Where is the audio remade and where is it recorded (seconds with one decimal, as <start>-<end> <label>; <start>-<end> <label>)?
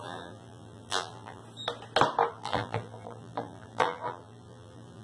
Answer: 0.0-1.4 remade; 1.4-2.3 recorded; 2.3-5.0 remade